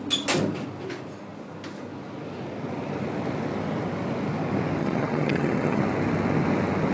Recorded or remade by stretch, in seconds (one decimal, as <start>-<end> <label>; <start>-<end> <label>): 0.0-4.8 recorded; 4.8-5.8 remade; 5.8-6.9 recorded